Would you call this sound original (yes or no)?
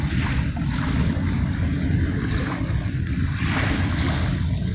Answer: yes